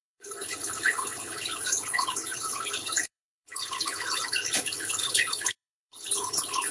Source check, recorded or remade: remade